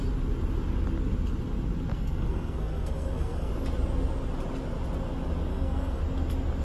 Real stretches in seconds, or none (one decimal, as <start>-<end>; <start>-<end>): 0.0-1.9; 3.5-5.5; 6.0-6.6

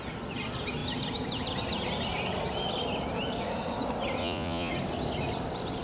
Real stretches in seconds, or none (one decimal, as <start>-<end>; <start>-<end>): 0.0-4.2; 4.7-5.8

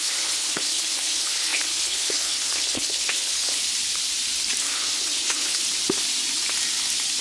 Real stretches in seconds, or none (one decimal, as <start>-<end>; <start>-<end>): 3.6-4.6; 5.6-7.2

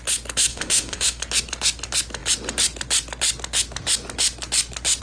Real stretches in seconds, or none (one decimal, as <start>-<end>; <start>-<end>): 0.0-0.5; 1.2-5.0

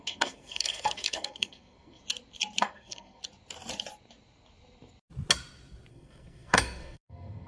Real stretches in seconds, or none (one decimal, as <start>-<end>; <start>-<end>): 2.0-2.6; 3.2-5.9

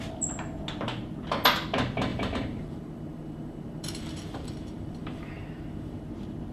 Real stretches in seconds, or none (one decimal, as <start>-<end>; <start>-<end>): 0.0-2.1; 6.0-6.5

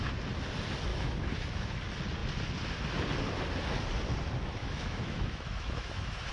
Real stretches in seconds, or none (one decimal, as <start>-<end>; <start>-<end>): 0.0-0.9; 1.8-4.6